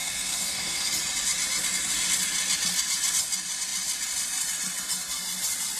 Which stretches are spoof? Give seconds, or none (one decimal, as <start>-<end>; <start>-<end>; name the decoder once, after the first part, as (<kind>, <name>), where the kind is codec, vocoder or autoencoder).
0.0-0.9 (codec, SNAC)